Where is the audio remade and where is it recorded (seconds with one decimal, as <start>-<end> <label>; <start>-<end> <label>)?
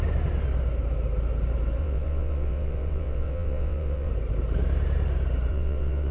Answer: 0.0-1.8 recorded; 1.8-4.1 remade; 4.1-5.5 recorded; 5.5-6.1 remade